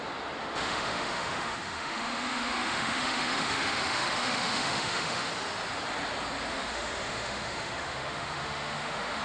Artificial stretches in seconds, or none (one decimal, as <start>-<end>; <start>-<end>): 0.4-5.3; 6.5-9.2